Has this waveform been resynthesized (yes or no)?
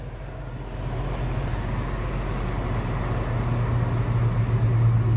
no